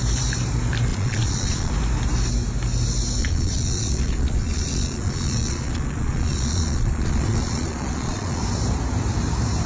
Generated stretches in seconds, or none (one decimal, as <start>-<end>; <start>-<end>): 0.9-1.7; 3.2-8.4

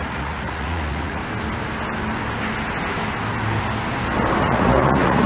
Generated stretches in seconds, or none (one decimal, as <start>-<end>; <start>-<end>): 0.0-1.2; 4.4-5.3